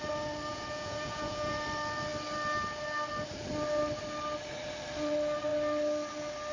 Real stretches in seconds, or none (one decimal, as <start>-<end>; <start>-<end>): 0.0-0.5; 1.6-6.5